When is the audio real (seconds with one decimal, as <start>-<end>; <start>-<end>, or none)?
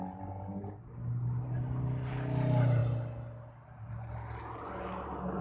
0.0-5.4